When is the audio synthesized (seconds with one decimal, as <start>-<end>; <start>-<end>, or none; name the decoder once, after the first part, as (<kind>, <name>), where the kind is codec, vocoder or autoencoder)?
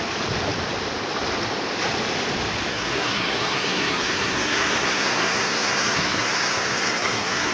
2.7-7.5 (codec, SNAC)